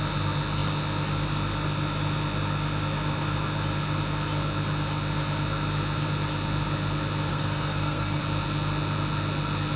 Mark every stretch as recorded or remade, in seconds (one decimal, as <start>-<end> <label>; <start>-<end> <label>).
0.0-7.3 recorded; 7.3-8.2 remade; 8.2-9.8 recorded

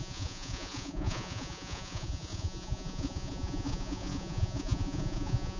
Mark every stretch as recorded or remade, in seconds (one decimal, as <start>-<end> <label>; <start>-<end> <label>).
0.0-5.6 remade

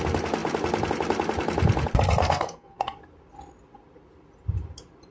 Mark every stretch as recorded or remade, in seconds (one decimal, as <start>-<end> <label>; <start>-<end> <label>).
0.0-2.2 recorded; 2.2-3.0 remade; 3.0-5.1 recorded

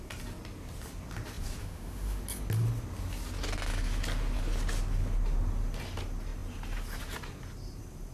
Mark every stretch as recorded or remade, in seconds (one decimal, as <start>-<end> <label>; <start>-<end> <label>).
0.0-1.6 recorded; 1.6-2.2 remade; 2.2-8.1 recorded

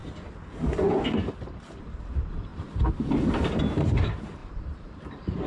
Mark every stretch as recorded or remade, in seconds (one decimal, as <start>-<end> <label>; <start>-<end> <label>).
0.0-1.8 recorded; 1.8-5.5 remade